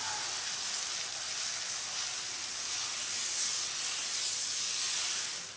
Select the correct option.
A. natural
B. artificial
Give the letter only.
A